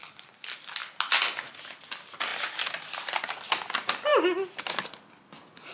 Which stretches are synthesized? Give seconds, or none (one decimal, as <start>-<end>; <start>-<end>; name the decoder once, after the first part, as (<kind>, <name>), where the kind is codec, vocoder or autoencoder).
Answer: none